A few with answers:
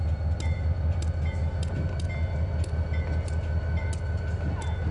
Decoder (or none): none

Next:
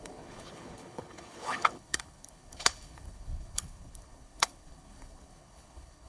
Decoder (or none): codec, HILCodec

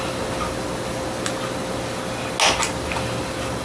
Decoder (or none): none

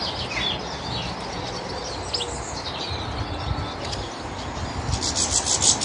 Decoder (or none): none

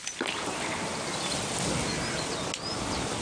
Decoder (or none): none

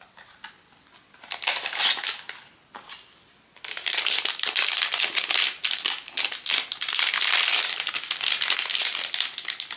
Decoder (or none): none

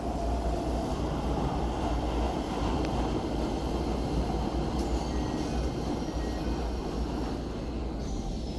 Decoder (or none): none